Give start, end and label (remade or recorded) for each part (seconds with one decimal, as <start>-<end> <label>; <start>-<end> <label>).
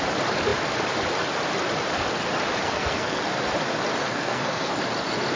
0.0-2.6 recorded; 2.6-3.2 remade; 3.2-4.0 recorded; 4.0-4.7 remade; 4.7-5.4 recorded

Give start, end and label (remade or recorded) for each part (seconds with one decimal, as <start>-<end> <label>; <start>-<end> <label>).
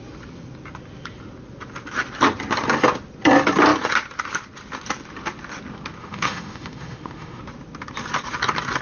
0.0-6.0 recorded; 6.0-7.4 remade; 7.4-8.8 recorded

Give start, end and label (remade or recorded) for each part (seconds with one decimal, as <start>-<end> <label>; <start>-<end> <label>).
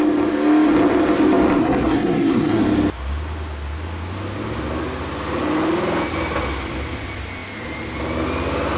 0.0-1.6 recorded; 1.6-2.6 remade; 2.6-8.8 recorded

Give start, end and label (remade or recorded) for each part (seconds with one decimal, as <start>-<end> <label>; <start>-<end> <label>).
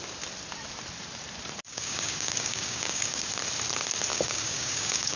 0.0-1.7 recorded; 1.7-3.3 remade; 3.3-4.1 recorded; 4.1-5.2 remade